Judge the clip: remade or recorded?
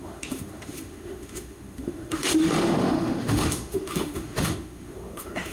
remade